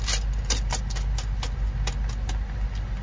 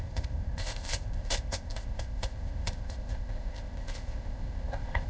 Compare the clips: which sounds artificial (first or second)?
second